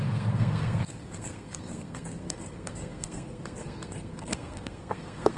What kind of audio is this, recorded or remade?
remade